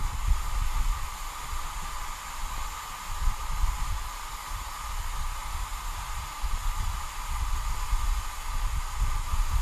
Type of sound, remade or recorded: recorded